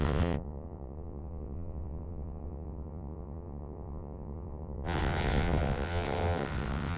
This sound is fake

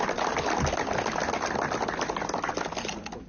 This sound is real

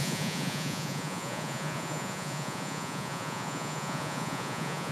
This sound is fake